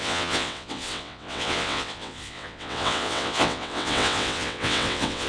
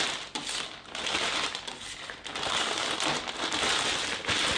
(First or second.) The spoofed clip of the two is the first